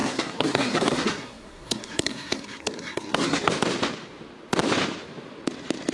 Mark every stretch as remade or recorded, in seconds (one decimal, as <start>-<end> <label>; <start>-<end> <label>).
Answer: 0.0-3.5 remade; 3.5-5.9 recorded